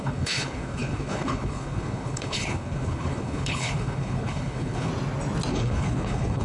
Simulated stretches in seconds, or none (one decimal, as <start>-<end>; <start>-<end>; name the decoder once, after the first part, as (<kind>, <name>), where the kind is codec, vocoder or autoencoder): 0.0-4.9 (codec, HILCodec); 5.5-6.4